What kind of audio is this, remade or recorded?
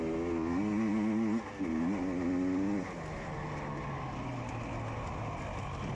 recorded